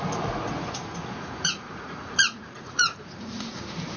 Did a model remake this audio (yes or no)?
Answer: yes